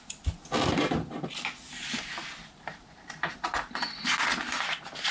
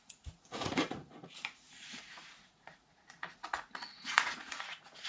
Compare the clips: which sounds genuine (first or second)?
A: first